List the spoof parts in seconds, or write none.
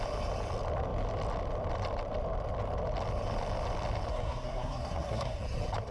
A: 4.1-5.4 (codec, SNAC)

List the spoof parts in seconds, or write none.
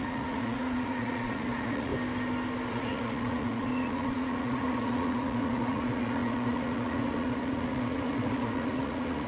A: 0.0-1.9 (vocoder, Vocos); 2.7-9.3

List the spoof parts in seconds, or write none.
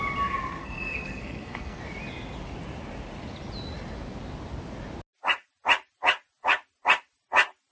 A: 0.6-1.8 (codec, SNAC)